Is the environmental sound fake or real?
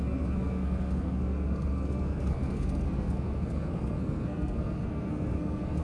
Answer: fake